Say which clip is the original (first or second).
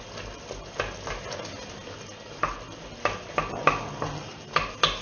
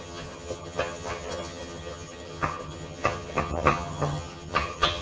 first